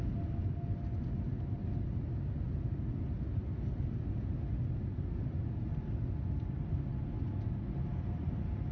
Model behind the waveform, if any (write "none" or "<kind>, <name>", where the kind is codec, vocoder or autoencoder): none